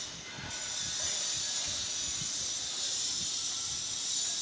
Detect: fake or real real